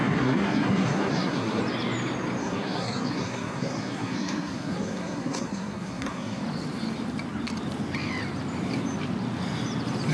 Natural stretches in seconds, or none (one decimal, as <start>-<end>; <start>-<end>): 1.6-2.4; 6.4-10.1